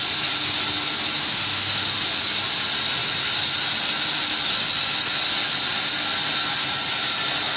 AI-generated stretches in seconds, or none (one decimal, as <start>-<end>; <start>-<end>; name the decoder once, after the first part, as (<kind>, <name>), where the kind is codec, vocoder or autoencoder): 1.2-2.1 (autoencoder, DAC-VAE)